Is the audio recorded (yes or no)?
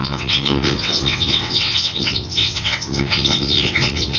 no